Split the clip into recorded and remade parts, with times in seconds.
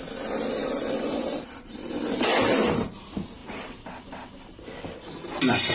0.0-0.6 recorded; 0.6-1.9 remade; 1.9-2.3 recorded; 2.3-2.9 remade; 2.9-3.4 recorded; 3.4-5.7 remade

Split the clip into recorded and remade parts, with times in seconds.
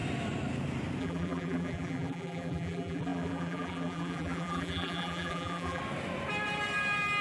0.0-1.0 recorded; 1.0-5.8 remade; 5.8-7.2 recorded